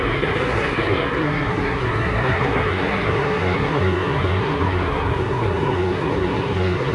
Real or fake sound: fake